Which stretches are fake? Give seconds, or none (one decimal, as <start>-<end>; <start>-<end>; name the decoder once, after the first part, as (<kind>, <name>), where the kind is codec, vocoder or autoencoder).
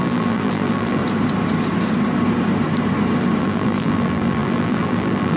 0.0-1.0 (vocoder, BigVGAN v2); 3.4-5.4